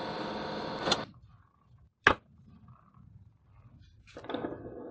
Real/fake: real